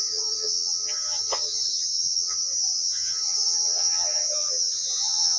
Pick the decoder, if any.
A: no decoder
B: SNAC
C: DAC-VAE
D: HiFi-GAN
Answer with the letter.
D